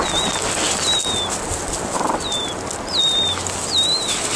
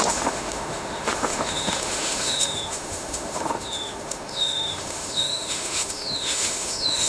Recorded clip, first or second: first